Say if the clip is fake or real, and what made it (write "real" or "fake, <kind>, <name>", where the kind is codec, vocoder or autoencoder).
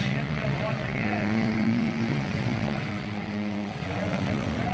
fake, vocoder, WaveNeXt